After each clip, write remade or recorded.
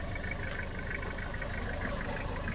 recorded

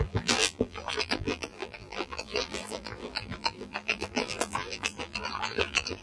remade